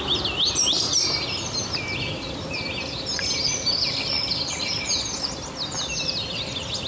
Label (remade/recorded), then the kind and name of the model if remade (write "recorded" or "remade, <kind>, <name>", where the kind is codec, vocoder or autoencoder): recorded